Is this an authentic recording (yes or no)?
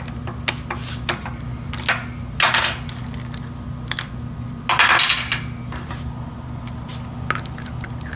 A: yes